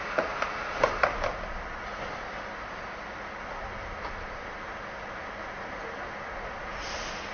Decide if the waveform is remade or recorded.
recorded